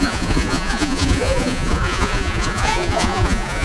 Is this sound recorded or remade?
remade